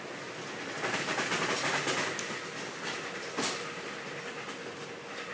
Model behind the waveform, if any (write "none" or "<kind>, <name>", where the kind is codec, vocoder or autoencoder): none